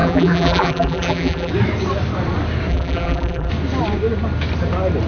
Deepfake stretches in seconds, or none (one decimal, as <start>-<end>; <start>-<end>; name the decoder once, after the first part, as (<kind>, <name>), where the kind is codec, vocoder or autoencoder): 0.0-1.5 (vocoder, BigVGAN v2); 2.7-3.5